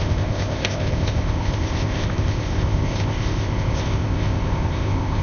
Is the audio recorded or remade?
remade